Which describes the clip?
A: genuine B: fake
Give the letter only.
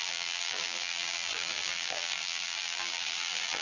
B